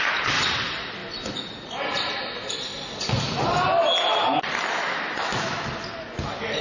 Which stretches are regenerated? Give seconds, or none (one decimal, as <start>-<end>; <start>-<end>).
4.8-5.7